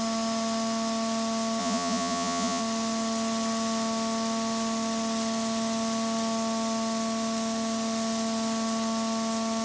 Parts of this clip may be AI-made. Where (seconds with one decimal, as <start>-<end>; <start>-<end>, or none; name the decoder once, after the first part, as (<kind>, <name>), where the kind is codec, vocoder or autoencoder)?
1.6-2.6 (vocoder, Vocos)